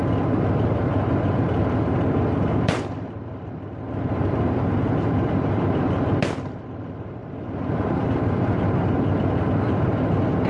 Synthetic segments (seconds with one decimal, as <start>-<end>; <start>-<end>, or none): 1.1-5.3; 7.2-10.1